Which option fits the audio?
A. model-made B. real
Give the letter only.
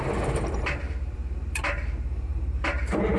A